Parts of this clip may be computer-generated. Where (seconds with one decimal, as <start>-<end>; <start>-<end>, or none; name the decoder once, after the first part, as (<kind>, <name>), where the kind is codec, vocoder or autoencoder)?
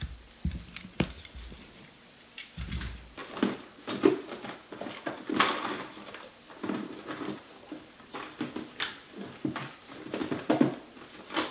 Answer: 0.0-3.2 (vocoder, BigVGAN v2); 3.8-10.2